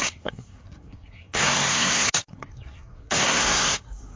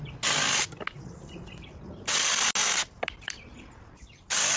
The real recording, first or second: second